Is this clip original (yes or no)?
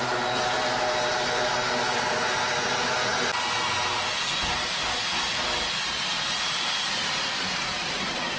yes